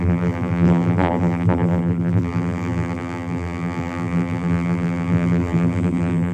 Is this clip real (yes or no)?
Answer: no